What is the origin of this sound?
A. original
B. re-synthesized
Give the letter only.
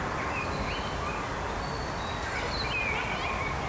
A